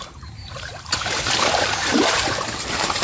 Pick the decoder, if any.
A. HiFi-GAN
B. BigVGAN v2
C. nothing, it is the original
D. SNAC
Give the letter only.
B